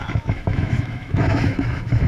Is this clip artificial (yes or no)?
yes